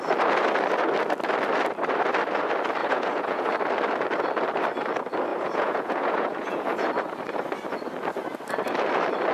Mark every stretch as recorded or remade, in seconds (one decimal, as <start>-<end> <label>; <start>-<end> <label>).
0.0-2.8 recorded; 2.8-3.5 remade; 3.5-5.3 recorded; 5.3-6.9 remade; 6.9-9.3 recorded